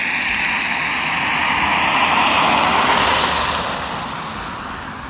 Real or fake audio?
real